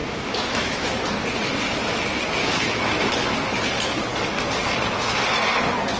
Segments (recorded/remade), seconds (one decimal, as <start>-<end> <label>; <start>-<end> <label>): 0.0-1.0 remade; 1.0-2.4 recorded; 2.4-3.1 remade; 3.1-6.0 recorded